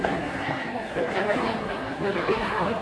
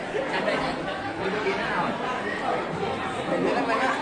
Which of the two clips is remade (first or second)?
first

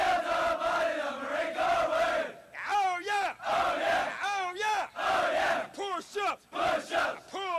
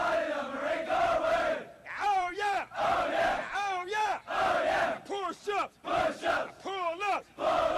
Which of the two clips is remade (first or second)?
second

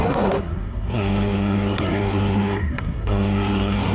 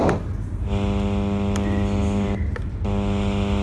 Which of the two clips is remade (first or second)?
first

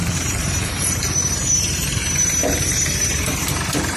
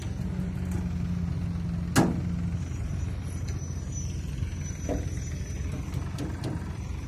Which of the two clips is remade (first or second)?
first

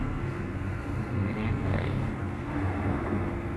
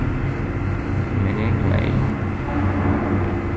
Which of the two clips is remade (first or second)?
first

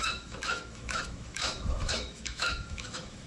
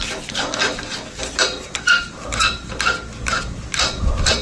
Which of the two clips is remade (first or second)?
first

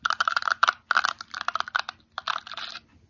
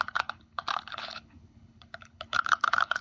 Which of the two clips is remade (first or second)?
second